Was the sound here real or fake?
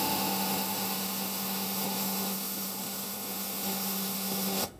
fake